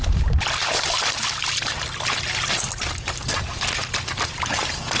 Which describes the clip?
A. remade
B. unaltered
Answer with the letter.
B